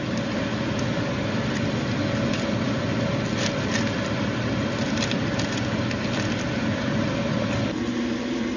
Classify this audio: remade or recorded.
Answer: recorded